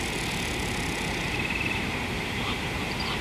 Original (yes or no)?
no